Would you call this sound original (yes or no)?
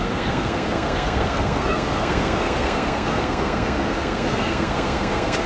no